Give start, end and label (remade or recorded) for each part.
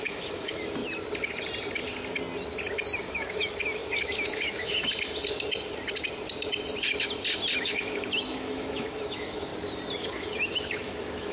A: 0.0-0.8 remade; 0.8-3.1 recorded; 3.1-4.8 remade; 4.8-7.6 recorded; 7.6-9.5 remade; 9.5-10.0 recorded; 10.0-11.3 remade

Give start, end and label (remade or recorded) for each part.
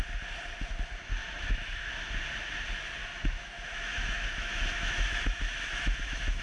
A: 0.0-1.2 recorded; 1.2-1.9 remade; 1.9-3.0 recorded; 3.0-6.4 remade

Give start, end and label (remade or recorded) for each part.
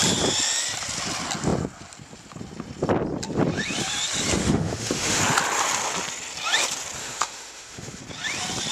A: 0.0-4.4 recorded; 4.4-5.2 remade; 5.2-7.0 recorded; 7.0-8.0 remade; 8.0-8.7 recorded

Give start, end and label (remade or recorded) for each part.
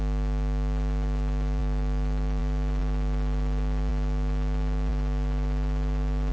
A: 0.0-1.6 recorded; 1.6-2.4 remade; 2.4-6.3 recorded